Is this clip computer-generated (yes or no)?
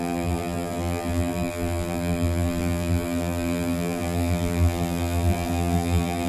yes